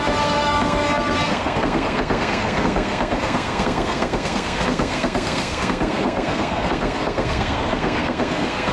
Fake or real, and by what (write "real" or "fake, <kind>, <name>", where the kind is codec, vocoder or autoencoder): fake, codec, SNAC